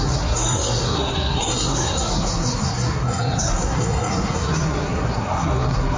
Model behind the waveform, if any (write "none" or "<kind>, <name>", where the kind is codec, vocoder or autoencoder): codec, SNAC